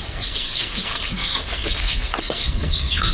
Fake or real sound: fake